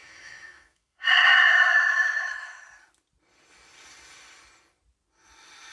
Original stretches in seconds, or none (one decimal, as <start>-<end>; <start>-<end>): 2.6-5.7